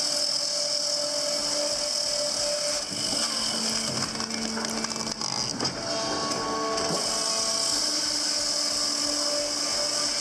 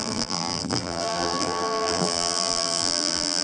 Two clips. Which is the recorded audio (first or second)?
first